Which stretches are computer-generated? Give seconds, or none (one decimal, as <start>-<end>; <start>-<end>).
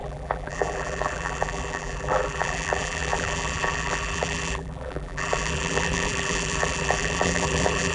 0.0-7.9